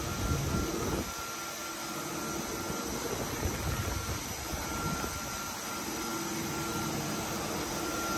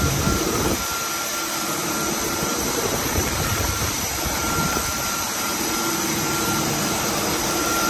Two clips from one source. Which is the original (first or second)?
first